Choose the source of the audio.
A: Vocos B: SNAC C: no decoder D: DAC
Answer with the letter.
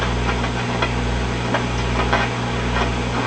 C